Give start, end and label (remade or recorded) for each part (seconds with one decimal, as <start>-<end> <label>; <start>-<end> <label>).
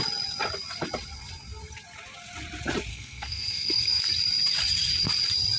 0.0-2.9 recorded; 2.9-4.1 remade; 4.1-5.6 recorded